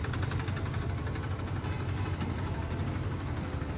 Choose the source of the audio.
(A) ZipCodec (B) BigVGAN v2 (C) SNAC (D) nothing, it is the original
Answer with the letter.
D